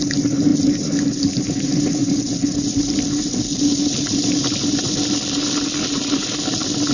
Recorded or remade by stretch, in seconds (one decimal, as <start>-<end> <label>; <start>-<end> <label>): 0.0-6.9 recorded